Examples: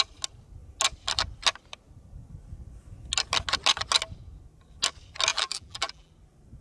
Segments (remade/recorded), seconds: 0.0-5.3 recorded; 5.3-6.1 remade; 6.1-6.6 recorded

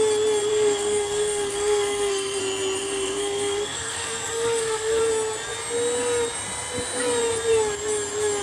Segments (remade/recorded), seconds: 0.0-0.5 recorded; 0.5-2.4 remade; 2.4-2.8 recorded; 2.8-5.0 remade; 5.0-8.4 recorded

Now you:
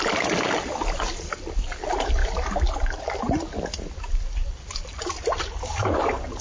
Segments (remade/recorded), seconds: 0.0-6.4 recorded

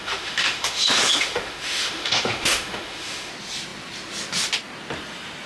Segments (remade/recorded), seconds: 0.0-3.3 remade; 3.3-5.5 recorded

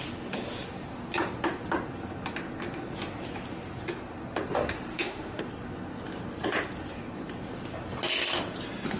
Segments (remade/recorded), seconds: 0.0-4.9 recorded; 4.9-5.4 remade; 5.4-9.0 recorded

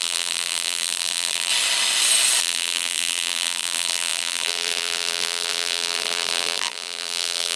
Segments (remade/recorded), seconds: 0.0-1.5 remade; 1.5-2.4 recorded; 2.4-7.6 remade

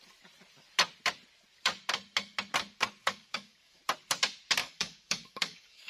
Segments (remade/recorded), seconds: 0.0-3.0 recorded; 3.0-3.8 remade; 3.8-4.6 recorded; 4.6-5.9 remade

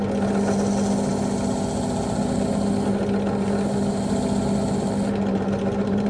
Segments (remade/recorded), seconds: 0.0-5.3 recorded; 5.3-6.1 remade